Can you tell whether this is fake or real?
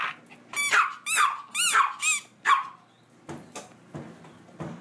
real